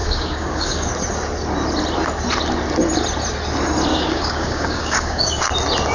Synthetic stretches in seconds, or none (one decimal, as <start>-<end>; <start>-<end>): 0.0-0.9; 3.9-5.5